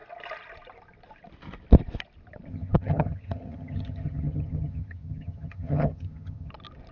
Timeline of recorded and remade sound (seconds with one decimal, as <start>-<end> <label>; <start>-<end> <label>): 0.0-2.5 recorded; 2.5-6.5 remade; 6.5-6.9 recorded